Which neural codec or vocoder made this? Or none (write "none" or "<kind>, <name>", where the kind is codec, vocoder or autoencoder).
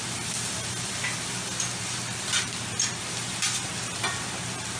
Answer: none